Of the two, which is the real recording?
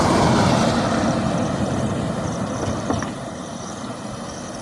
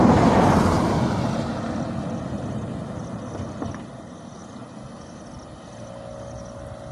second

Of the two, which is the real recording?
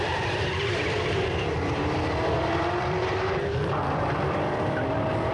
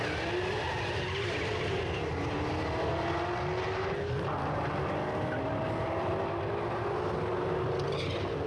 second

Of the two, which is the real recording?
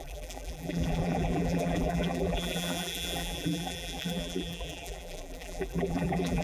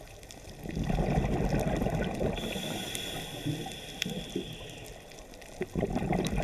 second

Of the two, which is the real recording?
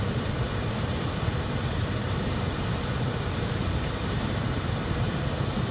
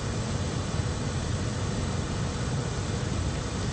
second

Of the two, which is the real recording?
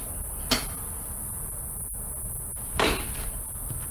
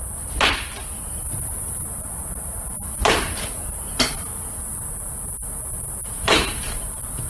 first